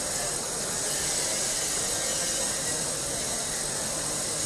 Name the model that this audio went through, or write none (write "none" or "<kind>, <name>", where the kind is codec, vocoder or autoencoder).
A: none